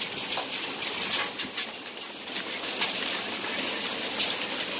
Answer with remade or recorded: recorded